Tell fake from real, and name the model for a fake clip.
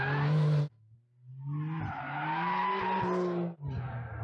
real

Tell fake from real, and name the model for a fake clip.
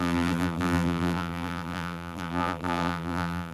fake, vocoder, BigVGAN v2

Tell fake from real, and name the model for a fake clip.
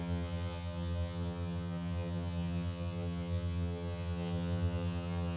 fake, vocoder, HiFi-GAN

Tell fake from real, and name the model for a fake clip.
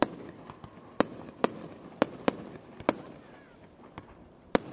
fake, vocoder, BigVGAN v2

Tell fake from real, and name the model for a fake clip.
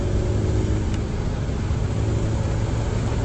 real